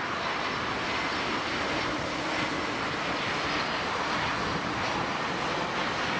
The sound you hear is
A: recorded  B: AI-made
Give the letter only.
A